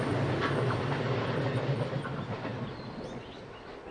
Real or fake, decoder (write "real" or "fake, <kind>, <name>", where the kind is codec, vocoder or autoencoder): real